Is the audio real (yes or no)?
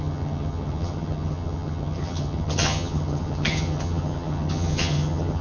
no